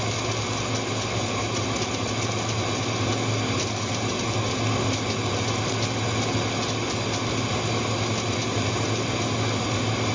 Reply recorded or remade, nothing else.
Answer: recorded